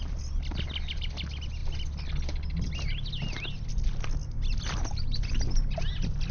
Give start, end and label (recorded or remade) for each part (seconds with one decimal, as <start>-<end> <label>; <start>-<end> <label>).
0.0-6.3 recorded